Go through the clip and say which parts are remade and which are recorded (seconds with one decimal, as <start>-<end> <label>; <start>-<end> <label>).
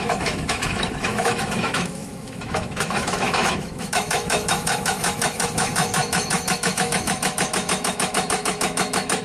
0.0-9.2 remade